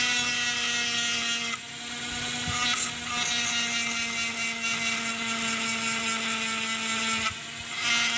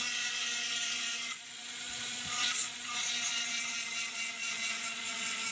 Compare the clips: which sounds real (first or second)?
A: first